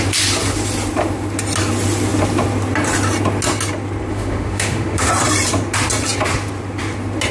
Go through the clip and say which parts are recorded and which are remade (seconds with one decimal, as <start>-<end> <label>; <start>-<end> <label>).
0.0-4.1 recorded; 4.1-5.1 remade; 5.1-7.3 recorded